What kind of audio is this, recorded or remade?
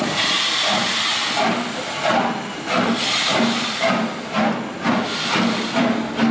recorded